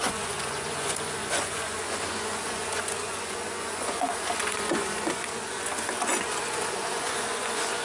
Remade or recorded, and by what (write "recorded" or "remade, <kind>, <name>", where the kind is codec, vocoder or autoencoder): remade, vocoder, Vocos